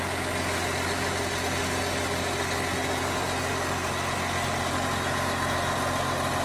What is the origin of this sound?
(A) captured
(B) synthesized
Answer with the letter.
A